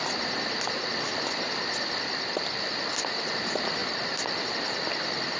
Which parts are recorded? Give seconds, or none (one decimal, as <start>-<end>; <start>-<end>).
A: 0.0-5.4